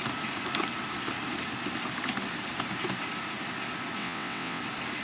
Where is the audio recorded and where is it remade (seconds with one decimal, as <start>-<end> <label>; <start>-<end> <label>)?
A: 0.0-4.0 recorded; 4.0-4.6 remade; 4.6-5.0 recorded